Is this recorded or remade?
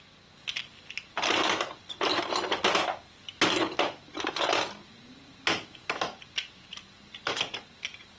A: recorded